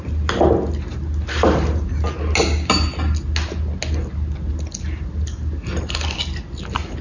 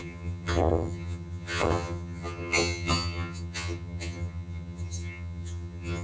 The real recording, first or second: first